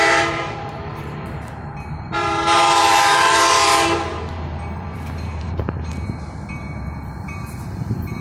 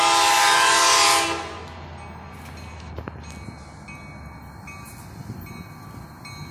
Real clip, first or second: second